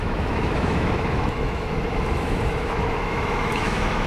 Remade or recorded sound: remade